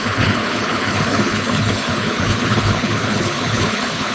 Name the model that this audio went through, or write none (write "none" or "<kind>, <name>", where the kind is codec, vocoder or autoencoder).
codec, HILCodec